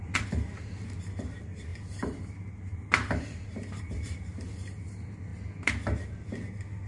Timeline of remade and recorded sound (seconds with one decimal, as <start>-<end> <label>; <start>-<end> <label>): 0.0-5.3 remade; 5.3-6.9 recorded